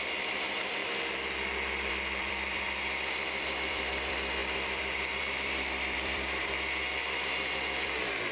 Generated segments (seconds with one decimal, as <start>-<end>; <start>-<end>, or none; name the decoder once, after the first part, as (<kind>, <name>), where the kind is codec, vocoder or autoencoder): 0.0-0.8 (vocoder, BigVGAN v2); 1.9-8.3